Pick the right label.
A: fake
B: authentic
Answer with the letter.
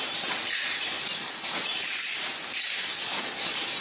A